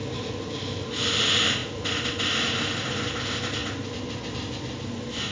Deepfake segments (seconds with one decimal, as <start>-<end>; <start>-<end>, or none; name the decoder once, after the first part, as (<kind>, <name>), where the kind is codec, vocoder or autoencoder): none